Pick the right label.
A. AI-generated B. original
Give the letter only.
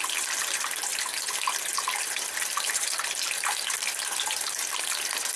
B